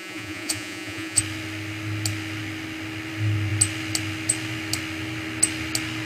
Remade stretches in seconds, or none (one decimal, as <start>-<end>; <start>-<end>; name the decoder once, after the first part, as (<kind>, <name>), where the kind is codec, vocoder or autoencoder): 0.0-1.2 (vocoder, Vocos)